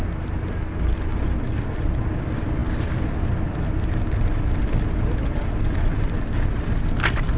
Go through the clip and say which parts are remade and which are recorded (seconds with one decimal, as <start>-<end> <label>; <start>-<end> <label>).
0.0-7.4 recorded